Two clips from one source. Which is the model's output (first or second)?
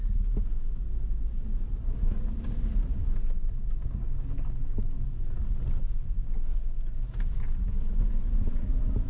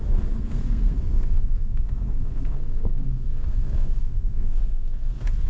second